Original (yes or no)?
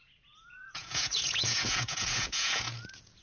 no